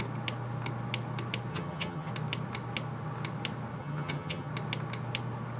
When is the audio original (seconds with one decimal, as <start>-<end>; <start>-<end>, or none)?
0.0-1.5; 2.1-3.8; 4.5-5.6